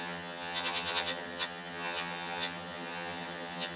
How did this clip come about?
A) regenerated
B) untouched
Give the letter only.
A